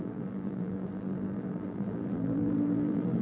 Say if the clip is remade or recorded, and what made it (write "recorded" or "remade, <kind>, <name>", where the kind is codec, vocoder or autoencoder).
remade, vocoder, BigVGAN v2